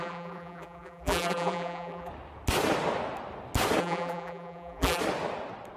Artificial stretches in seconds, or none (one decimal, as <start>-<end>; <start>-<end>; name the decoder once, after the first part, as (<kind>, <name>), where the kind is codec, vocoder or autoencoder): 0.0-2.1 (vocoder, BigVGAN v2); 3.8-5.0